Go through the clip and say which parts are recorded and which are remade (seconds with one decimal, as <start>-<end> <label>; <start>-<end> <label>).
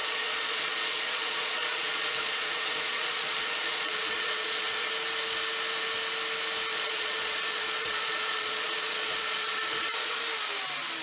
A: 0.0-4.9 remade; 4.9-6.7 recorded; 6.7-10.2 remade; 10.2-11.0 recorded